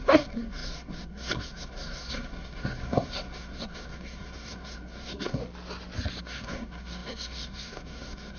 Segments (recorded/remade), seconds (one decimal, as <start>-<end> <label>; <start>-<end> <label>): 0.0-5.4 remade; 5.4-6.2 recorded; 6.2-8.4 remade